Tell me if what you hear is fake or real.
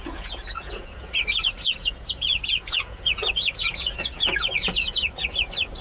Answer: fake